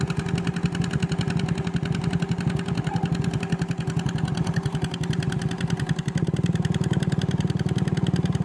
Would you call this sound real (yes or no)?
yes